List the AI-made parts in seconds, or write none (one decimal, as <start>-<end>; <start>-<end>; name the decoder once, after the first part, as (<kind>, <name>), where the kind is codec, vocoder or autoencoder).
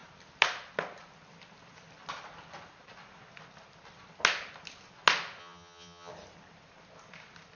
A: 5.4-6.1 (vocoder, HiFi-GAN)